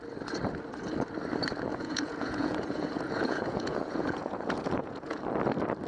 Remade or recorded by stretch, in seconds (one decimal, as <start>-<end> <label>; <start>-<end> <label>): 0.0-1.7 recorded; 1.7-5.2 remade; 5.2-5.9 recorded